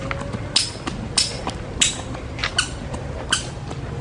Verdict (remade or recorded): recorded